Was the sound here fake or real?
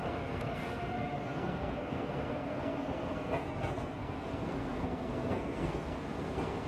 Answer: fake